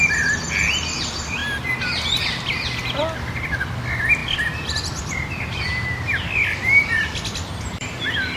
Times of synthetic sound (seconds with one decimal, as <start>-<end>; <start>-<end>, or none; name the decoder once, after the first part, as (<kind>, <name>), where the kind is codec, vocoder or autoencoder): none